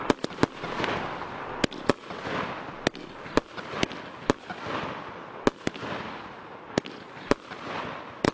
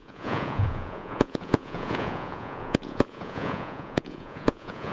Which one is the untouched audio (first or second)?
first